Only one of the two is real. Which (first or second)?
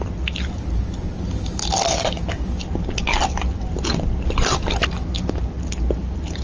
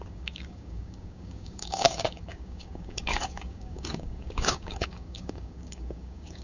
first